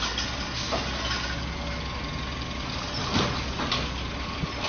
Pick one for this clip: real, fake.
real